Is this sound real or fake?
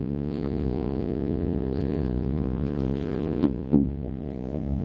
fake